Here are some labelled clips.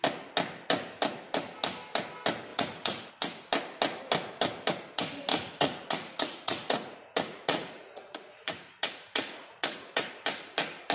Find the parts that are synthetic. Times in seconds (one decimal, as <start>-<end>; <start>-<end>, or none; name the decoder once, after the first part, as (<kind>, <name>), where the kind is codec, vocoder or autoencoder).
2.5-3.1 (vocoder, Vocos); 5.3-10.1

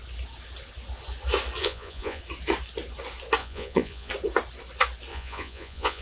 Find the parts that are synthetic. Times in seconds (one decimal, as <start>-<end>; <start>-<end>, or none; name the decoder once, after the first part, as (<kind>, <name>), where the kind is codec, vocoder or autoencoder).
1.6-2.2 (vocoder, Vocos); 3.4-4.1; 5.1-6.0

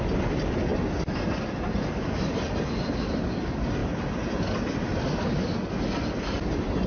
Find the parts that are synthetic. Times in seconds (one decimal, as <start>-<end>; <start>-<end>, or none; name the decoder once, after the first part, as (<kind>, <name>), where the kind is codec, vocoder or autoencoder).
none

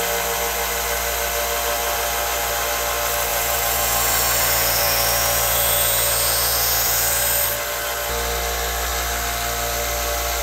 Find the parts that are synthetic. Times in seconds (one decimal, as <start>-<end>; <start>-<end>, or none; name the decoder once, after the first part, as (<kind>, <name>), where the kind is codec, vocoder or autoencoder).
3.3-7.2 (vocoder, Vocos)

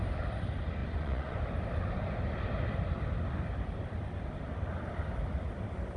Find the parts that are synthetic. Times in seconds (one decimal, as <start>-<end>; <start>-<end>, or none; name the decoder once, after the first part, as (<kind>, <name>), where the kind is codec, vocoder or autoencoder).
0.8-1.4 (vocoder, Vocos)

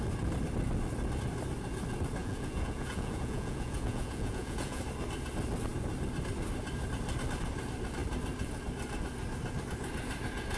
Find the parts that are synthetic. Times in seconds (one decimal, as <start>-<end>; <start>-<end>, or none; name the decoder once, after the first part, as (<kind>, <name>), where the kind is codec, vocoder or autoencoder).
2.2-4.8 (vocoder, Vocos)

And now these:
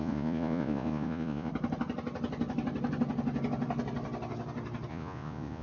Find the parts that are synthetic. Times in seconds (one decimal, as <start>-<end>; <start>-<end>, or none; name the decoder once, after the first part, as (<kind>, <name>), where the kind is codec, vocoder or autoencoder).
0.0-1.5 (vocoder, Vocos); 4.9-5.6